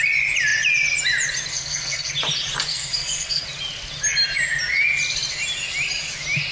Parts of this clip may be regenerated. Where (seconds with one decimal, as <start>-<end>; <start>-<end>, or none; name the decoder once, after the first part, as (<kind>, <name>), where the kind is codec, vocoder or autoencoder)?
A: 1.5-2.1 (codec, SNAC); 2.7-3.4